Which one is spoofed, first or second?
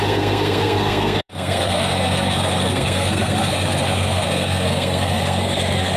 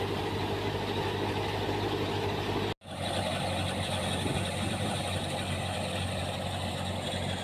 first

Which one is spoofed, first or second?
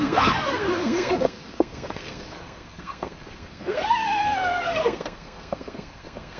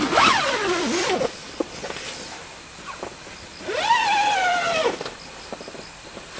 first